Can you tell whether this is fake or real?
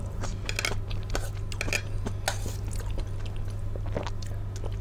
real